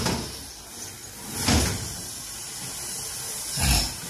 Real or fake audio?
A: real